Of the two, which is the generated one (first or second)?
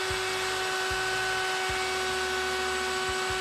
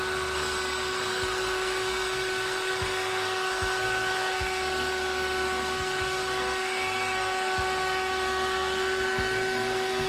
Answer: second